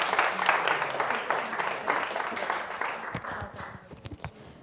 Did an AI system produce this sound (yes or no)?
no